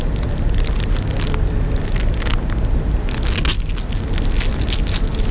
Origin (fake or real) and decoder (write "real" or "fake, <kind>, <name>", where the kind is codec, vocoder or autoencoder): real